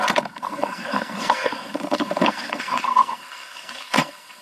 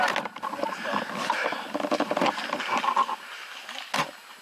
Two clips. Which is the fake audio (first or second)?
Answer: first